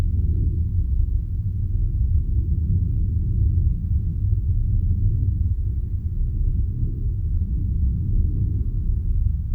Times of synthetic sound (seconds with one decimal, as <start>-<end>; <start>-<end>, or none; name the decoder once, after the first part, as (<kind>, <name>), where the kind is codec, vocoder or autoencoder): 3.8-5.1 (autoencoder, DAC-VAE); 6.5-8.8